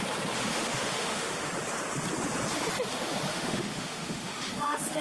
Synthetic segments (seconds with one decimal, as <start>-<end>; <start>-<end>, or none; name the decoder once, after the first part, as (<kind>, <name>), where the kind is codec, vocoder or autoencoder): 0.5-1.5 (autoencoder, DAC-VAE); 3.3-5.0